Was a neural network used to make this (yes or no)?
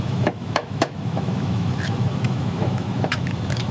yes